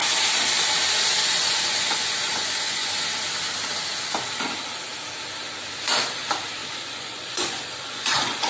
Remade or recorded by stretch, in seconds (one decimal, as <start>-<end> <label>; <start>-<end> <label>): 0.0-1.2 recorded; 1.2-2.9 remade; 2.9-6.6 recorded; 6.6-8.5 remade